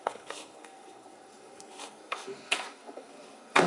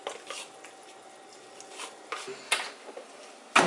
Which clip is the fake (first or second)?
first